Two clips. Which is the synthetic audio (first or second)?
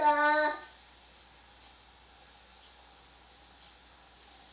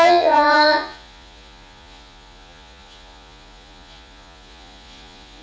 second